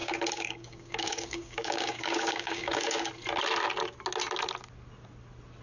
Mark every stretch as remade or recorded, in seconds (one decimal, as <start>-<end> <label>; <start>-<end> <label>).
0.0-3.1 remade; 3.1-5.6 recorded